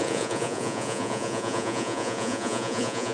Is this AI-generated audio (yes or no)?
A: yes